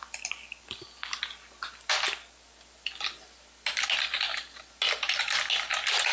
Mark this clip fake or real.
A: real